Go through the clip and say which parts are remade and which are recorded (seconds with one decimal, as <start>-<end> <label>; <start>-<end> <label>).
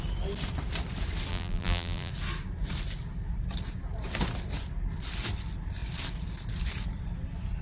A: 0.0-1.3 recorded; 1.3-2.1 remade; 2.1-7.6 recorded